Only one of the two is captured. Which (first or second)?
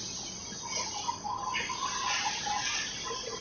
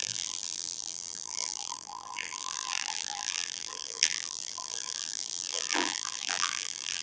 first